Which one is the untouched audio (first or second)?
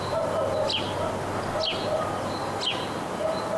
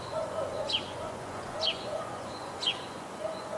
first